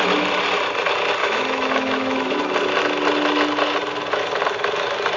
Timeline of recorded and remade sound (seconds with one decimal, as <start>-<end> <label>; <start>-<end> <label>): 0.0-1.2 recorded; 1.2-2.4 remade; 2.4-5.2 recorded